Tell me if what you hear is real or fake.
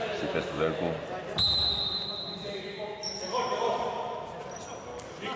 real